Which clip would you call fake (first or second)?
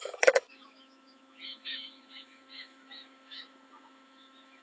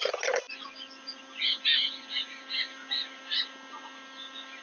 first